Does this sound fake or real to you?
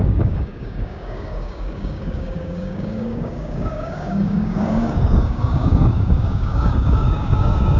fake